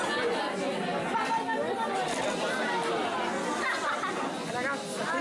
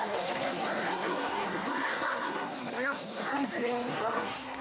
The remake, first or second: second